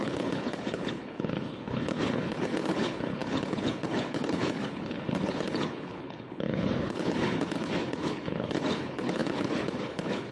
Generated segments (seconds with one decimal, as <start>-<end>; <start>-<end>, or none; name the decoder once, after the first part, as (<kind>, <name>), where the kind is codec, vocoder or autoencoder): 0.0-10.3 (codec, HILCodec)